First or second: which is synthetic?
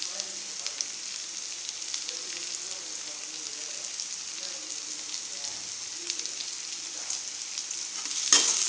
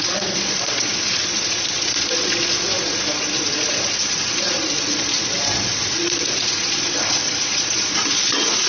second